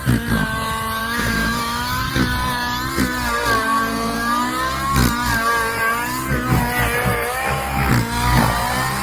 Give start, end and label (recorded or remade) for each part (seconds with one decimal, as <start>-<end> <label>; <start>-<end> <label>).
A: 0.0-1.0 recorded; 1.0-2.1 remade; 2.1-7.1 recorded; 7.1-7.9 remade; 7.9-9.0 recorded